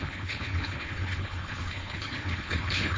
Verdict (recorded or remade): remade